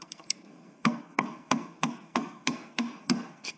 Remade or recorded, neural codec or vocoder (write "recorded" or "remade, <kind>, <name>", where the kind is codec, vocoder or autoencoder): remade, codec, SNAC